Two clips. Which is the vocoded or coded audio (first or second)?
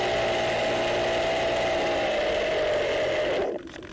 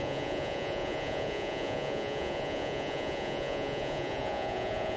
second